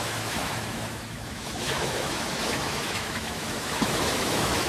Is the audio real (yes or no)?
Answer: no